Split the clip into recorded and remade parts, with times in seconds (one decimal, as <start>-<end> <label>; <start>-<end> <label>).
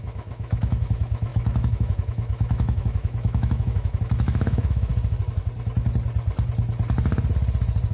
0.0-4.9 remade; 4.9-7.9 recorded